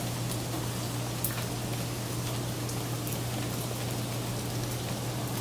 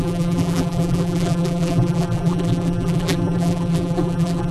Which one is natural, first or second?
first